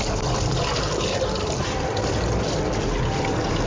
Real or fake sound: fake